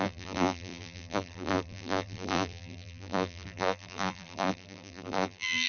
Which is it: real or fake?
fake